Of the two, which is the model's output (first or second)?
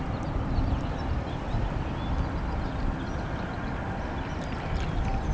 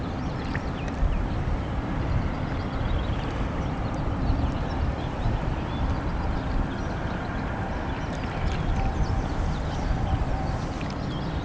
second